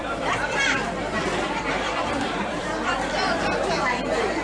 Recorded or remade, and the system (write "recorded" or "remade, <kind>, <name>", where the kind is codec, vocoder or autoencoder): remade, vocoder, BigVGAN v2